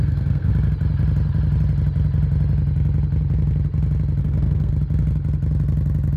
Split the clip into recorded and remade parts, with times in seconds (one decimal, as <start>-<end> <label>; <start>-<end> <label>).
0.0-0.5 remade; 0.5-4.2 recorded; 4.2-4.7 remade; 4.7-6.2 recorded